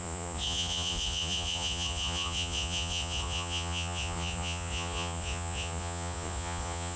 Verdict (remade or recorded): remade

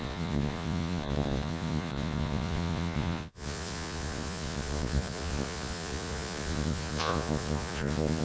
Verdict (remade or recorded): remade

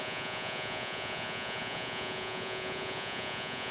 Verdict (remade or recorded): remade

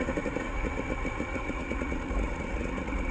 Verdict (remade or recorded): remade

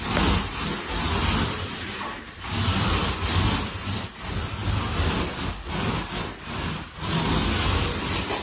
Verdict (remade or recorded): recorded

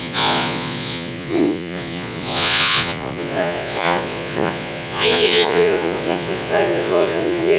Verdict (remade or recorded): remade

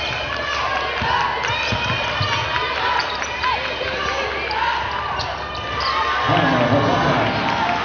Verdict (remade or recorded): recorded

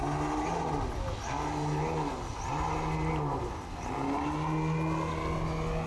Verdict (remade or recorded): recorded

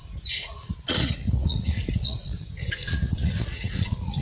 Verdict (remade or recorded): remade